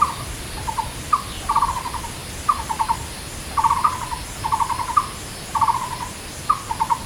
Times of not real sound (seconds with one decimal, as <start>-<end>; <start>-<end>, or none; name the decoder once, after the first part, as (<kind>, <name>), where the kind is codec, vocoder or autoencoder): 0.0-2.2 (vocoder, BigVGAN v2); 6.5-7.1